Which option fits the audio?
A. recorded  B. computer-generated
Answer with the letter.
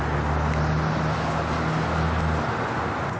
A